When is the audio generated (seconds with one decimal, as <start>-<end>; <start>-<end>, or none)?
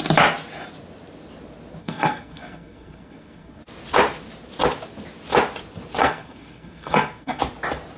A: 1.8-3.6; 6.0-7.4